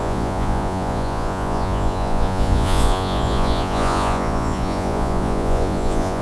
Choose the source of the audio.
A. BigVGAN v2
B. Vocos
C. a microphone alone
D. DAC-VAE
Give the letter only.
B